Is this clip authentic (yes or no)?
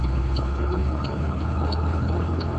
no